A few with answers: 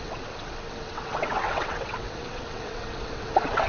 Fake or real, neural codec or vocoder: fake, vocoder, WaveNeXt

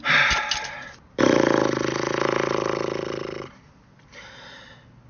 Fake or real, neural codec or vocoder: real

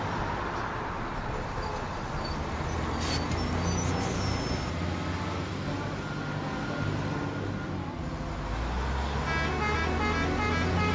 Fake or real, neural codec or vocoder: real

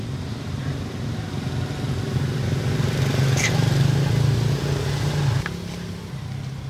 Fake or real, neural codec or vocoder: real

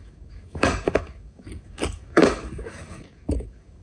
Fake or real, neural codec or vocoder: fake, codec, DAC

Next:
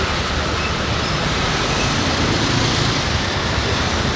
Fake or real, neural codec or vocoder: fake, vocoder, BigVGAN v2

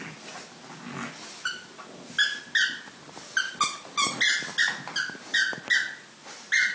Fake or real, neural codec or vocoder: real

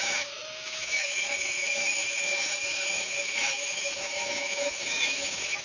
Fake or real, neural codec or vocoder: fake, autoencoder, DAC-VAE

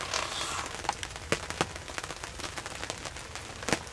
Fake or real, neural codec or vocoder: real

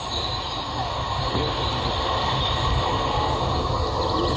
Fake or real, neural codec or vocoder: real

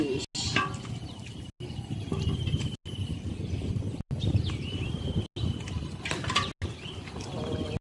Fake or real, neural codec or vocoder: real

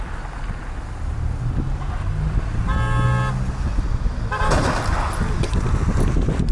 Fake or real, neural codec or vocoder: real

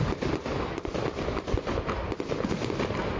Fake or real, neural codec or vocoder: real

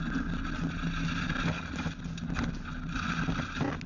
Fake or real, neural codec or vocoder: real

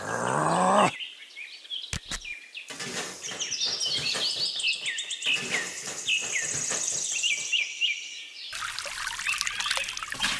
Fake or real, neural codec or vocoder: real